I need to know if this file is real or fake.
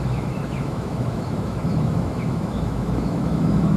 fake